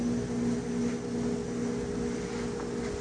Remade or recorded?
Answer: recorded